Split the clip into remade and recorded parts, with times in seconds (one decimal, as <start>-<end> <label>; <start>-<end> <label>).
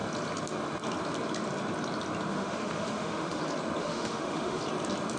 0.0-2.3 recorded; 2.3-3.4 remade; 3.4-3.8 recorded; 3.8-4.6 remade; 4.6-5.2 recorded